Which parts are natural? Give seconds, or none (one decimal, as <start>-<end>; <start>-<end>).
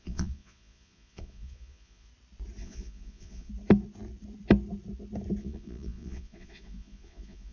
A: 2.1-2.6; 3.5-5.4